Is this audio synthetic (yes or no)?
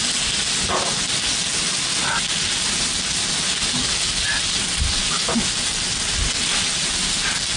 no